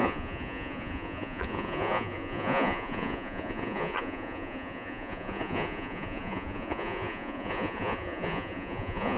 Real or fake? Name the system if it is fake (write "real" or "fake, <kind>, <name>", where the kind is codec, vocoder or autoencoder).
fake, vocoder, Vocos